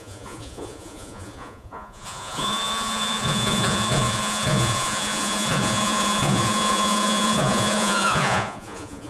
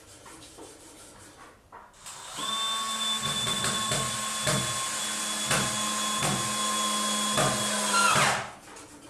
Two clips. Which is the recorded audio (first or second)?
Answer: second